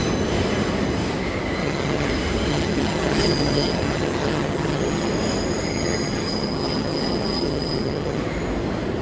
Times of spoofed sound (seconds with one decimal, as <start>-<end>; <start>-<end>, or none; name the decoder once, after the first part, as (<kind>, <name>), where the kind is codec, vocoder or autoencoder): 1.6-2.1 (vocoder, HiFi-GAN); 2.5-5.1; 5.7-8.2